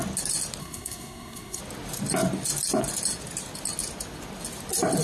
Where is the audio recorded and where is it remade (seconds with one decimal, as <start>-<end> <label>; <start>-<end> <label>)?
0.0-0.6 recorded; 0.6-1.6 remade; 1.6-5.0 recorded